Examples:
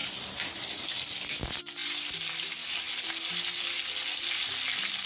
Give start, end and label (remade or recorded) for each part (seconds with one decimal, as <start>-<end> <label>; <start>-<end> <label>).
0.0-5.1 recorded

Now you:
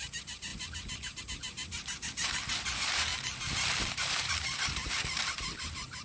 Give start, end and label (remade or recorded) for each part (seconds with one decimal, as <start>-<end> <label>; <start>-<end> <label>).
0.0-3.1 remade; 3.1-3.8 recorded; 3.8-6.0 remade

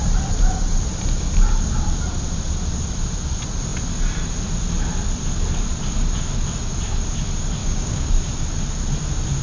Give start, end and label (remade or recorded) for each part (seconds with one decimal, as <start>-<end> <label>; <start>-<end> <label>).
0.0-7.6 recorded; 7.6-8.1 remade; 8.1-9.4 recorded